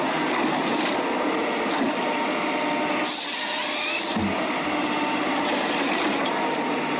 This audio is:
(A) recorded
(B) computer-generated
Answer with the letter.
A